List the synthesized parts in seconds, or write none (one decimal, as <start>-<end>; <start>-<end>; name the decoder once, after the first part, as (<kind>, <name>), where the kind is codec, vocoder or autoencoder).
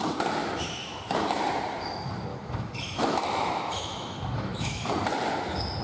0.4-1.4 (autoencoder, DAC-VAE); 2.3-4.9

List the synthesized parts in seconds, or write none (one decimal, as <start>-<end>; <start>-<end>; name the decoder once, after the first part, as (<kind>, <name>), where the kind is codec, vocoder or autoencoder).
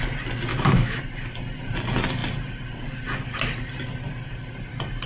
0.5-1.0 (autoencoder, DAC-VAE)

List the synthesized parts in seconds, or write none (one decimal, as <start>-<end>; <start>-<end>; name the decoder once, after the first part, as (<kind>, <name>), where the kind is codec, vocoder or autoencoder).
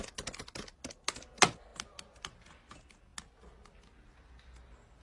none